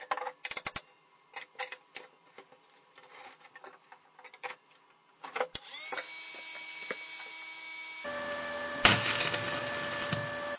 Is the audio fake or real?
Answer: real